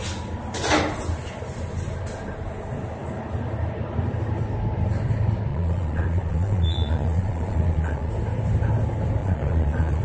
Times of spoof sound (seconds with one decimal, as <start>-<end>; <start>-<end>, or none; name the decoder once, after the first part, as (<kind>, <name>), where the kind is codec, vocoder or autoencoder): 5.5-8.1 (vocoder, Vocos); 9.2-10.0

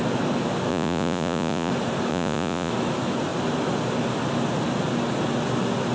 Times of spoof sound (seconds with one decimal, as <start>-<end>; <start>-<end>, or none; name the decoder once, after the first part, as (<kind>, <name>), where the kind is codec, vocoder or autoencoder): 0.7-1.7 (vocoder, Vocos); 2.1-2.7